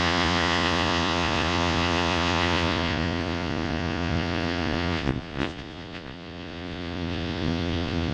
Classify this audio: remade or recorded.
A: remade